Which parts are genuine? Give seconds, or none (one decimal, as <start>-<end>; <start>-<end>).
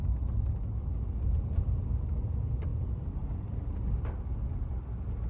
0.0-5.3